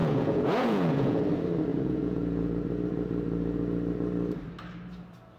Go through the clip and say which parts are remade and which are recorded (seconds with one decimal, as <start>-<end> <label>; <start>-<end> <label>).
0.0-1.2 remade; 1.2-1.7 recorded; 1.7-2.5 remade; 2.5-5.4 recorded